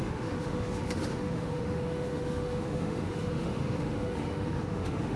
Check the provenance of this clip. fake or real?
fake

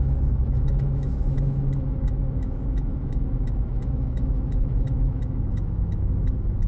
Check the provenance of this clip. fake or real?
fake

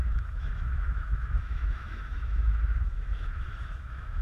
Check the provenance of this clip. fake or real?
fake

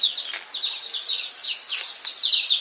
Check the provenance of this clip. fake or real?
real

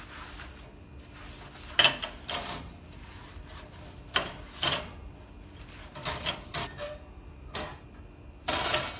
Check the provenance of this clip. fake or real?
real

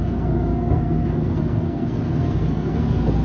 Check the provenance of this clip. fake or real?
fake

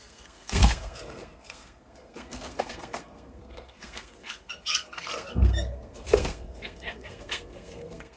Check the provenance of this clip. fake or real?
fake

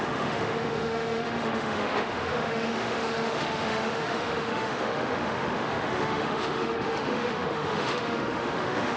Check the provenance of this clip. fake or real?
fake